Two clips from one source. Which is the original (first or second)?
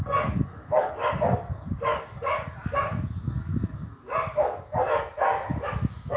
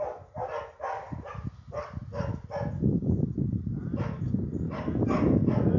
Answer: second